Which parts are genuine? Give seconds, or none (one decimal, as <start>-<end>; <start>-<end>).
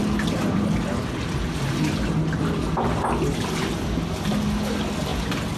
0.0-5.6